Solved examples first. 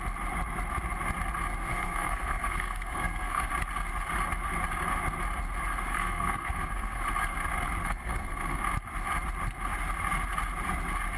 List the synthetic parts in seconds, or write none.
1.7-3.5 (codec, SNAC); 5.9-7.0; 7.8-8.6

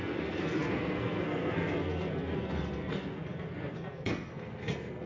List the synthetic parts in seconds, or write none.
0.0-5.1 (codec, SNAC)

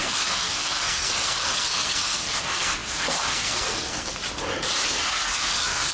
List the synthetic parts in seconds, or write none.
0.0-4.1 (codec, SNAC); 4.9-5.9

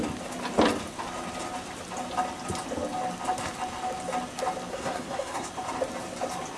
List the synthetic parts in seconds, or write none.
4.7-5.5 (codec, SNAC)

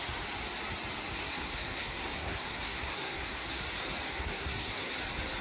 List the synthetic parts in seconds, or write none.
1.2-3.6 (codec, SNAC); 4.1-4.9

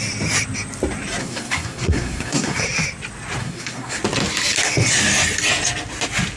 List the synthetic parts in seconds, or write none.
1.2-2.6 (codec, SNAC); 3.4-4.0

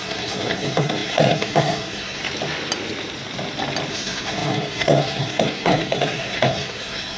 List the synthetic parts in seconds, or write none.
0.0-2.2 (codec, SNAC); 3.9-7.2